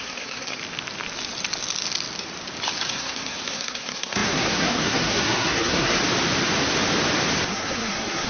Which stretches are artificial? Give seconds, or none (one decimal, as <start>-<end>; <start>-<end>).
0.0-0.6; 2.9-6.0; 7.5-8.3